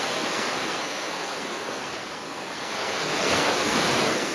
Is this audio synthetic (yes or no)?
yes